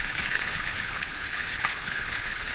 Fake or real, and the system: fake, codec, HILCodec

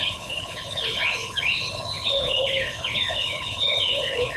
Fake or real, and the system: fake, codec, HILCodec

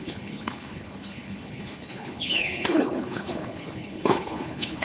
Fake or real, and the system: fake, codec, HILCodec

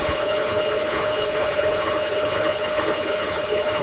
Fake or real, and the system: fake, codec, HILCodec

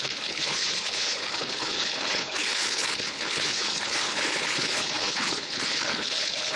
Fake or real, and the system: fake, codec, HILCodec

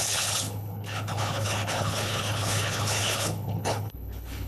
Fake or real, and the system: fake, codec, HILCodec